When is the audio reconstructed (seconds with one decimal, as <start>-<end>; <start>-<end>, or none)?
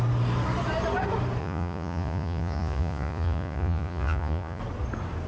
1.4-4.6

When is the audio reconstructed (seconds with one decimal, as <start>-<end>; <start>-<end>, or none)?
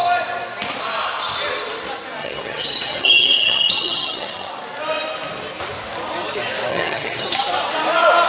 2.2-4.5; 6.7-7.4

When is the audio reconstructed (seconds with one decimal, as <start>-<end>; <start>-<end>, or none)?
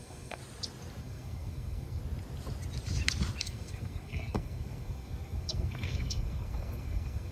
0.0-0.4; 1.0-2.0; 3.4-7.3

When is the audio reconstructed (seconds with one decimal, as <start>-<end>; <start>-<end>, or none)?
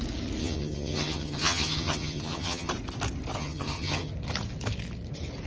0.4-2.7; 3.4-4.1